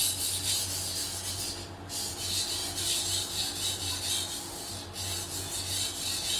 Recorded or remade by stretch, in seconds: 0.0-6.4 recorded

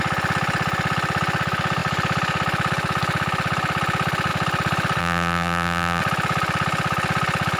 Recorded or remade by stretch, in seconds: 0.0-5.0 recorded; 5.0-6.0 remade; 6.0-7.6 recorded

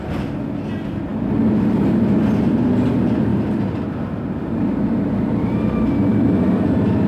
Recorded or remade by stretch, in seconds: 0.0-3.3 recorded; 3.3-5.8 remade; 5.8-7.1 recorded

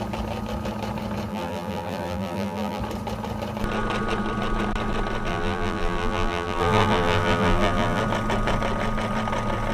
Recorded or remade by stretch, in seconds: 0.0-1.3 recorded; 1.3-2.8 remade; 2.8-5.3 recorded; 5.3-8.0 remade; 8.0-9.7 recorded

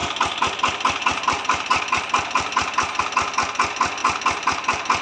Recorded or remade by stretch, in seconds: 0.0-3.0 remade; 3.0-4.0 recorded; 4.0-5.0 remade